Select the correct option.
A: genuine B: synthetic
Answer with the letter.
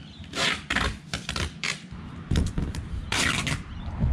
B